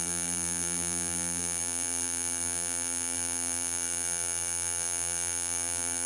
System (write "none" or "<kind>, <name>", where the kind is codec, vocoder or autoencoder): vocoder, BigVGAN v2